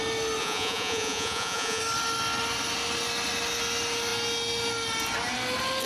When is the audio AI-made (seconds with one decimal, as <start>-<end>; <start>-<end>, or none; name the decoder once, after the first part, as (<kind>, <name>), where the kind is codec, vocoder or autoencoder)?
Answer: 0.4-1.8 (vocoder, Vocos)